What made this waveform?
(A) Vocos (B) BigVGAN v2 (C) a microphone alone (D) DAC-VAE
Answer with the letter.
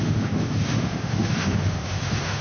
D